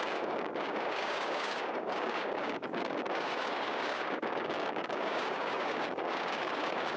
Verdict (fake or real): fake